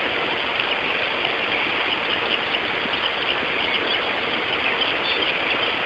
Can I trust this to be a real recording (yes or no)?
yes